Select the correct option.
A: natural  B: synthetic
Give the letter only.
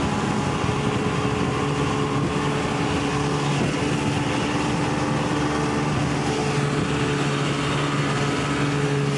A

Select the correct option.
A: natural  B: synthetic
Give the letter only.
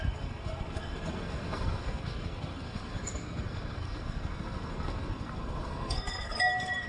B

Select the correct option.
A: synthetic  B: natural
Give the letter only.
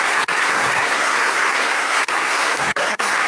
A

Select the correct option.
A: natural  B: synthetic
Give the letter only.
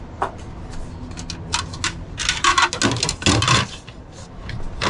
A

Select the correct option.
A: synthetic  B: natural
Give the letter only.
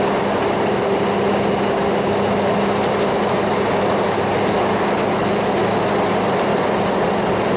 B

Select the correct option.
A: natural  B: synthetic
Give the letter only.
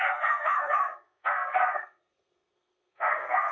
B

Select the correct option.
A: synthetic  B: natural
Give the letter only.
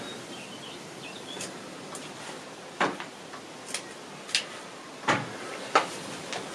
B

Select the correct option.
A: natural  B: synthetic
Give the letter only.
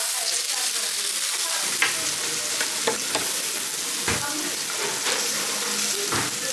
A